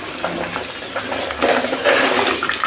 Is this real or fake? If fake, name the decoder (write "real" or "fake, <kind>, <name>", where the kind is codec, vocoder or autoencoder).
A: real